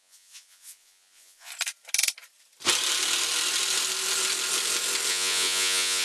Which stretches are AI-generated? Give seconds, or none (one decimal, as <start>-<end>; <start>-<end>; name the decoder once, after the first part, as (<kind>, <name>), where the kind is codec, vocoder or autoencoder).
0.0-1.5 (vocoder, Vocos); 5.1-6.0